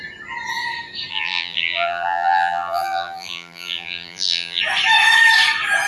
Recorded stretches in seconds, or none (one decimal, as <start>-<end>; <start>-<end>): 0.0-1.1; 4.6-5.9